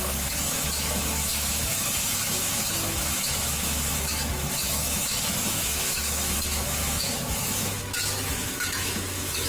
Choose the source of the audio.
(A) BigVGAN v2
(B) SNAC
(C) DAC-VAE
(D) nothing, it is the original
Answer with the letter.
C